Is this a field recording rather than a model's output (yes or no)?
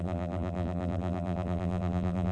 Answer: no